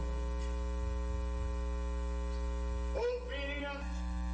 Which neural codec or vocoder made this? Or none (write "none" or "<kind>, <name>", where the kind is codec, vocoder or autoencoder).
none